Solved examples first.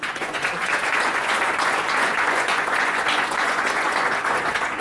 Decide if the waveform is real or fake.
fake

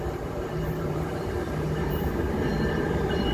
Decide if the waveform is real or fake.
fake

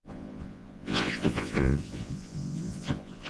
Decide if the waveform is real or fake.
fake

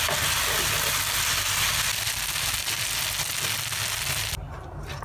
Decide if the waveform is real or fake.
real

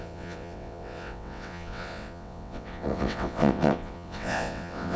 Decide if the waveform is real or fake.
fake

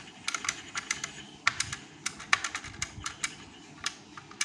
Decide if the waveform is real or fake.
real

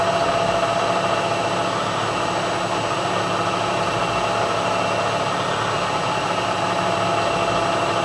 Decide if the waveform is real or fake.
real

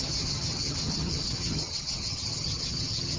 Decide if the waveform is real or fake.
fake